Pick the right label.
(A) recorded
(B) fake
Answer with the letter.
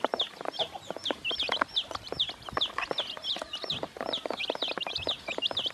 B